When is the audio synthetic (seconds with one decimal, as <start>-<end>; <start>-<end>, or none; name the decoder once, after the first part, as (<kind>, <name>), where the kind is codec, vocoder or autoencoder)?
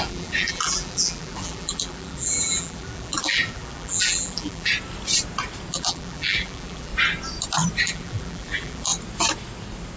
0.0-4.7 (vocoder, BigVGAN v2); 5.7-6.9; 7.8-8.9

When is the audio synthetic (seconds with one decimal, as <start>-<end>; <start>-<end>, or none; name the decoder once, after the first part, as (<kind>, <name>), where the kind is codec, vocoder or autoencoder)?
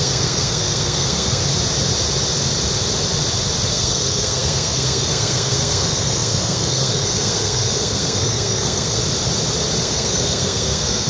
0.0-1.4 (codec, SNAC); 3.7-9.0; 9.8-11.1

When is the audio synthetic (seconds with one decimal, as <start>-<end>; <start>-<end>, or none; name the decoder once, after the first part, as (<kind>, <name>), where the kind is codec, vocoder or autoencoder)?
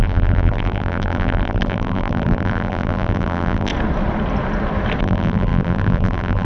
0.0-3.7 (vocoder, BigVGAN v2); 5.0-6.4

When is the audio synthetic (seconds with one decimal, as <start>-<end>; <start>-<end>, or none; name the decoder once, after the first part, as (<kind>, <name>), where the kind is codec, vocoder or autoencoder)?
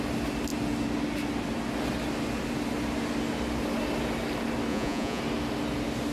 4.7-5.2 (vocoder, Vocos)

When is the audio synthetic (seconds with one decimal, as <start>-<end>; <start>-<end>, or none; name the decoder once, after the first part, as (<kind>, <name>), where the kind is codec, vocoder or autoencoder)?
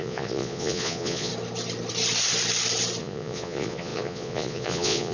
0.0-1.3 (vocoder, Vocos); 3.0-5.1